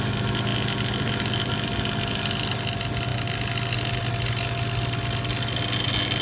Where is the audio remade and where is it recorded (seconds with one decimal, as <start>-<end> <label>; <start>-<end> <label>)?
0.0-6.2 recorded